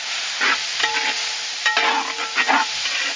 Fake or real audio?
real